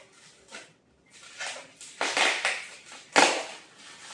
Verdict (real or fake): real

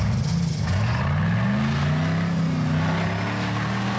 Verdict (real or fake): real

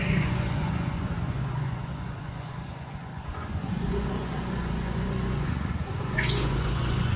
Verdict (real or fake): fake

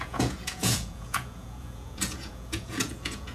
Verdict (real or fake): fake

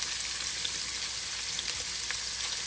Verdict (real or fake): real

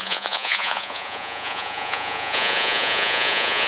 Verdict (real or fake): fake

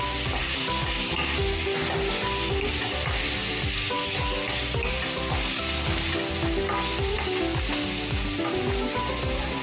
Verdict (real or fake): real